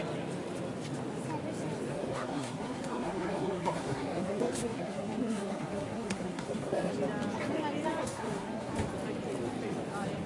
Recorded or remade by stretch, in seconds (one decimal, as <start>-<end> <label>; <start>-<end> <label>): 0.0-1.9 recorded; 1.9-6.9 remade; 6.9-8.0 recorded; 8.0-8.7 remade; 8.7-10.3 recorded